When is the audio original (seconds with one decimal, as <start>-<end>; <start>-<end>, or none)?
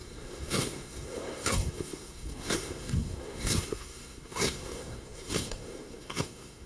none